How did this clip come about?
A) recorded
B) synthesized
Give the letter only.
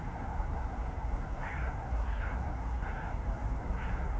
B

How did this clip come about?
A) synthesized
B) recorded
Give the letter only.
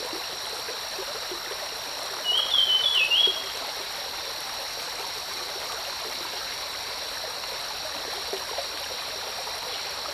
B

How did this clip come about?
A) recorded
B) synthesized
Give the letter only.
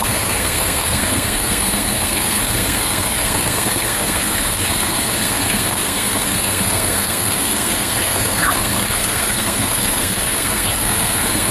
B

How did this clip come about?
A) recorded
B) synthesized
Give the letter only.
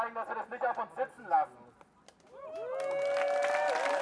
A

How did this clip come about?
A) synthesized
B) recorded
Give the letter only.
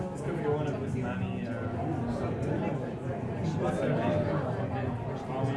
B